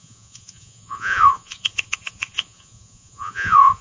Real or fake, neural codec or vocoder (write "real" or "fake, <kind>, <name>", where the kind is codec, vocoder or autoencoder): fake, vocoder, Vocos